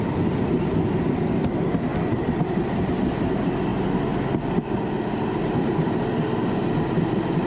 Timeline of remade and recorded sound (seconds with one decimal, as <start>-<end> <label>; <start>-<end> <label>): 0.0-7.5 recorded